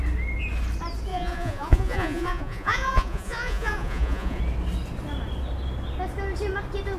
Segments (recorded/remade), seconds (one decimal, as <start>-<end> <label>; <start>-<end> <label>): 0.0-1.1 recorded; 1.1-4.4 remade; 4.4-7.0 recorded

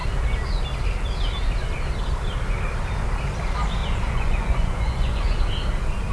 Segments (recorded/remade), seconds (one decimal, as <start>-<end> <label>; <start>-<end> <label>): 0.0-3.8 recorded; 3.8-5.4 remade; 5.4-6.1 recorded